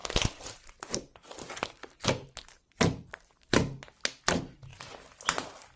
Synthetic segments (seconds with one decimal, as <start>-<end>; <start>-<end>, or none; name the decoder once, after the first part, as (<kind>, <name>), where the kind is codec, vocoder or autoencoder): 2.5-3.3 (vocoder, BigVGAN v2)